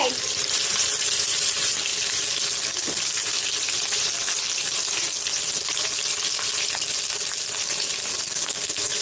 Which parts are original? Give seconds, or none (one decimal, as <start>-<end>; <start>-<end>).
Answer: 0.0-8.1